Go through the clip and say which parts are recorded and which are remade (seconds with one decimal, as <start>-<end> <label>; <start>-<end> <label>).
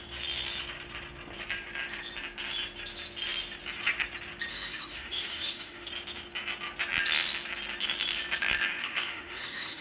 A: 0.0-4.5 recorded; 4.5-5.9 remade; 5.9-8.8 recorded; 8.8-9.8 remade